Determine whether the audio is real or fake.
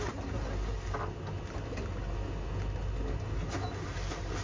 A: real